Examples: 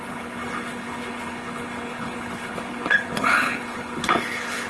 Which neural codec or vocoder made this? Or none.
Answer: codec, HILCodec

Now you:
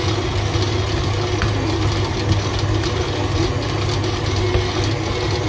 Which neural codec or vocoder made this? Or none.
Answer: none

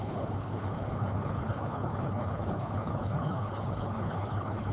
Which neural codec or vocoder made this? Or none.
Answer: codec, HILCodec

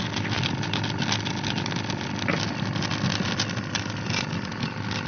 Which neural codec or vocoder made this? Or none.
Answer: none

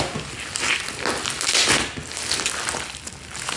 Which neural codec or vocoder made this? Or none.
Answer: none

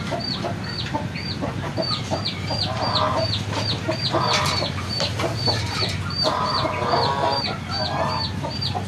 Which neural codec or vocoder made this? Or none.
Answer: none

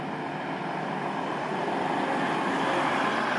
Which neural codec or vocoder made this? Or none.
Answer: none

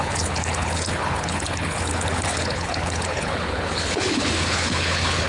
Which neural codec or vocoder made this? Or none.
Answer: codec, HILCodec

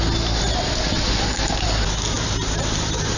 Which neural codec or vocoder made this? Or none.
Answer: none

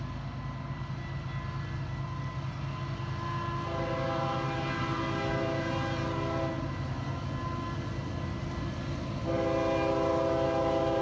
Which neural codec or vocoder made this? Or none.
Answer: none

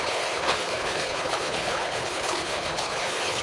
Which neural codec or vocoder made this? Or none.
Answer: codec, HILCodec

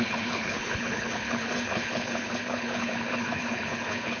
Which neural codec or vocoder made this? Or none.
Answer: codec, HILCodec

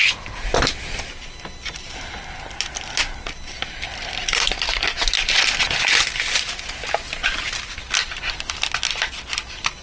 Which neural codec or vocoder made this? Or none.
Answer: none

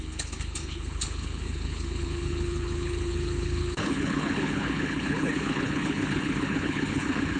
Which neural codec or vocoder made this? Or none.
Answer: codec, HILCodec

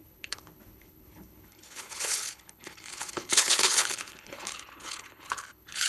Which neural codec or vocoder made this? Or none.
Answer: codec, HILCodec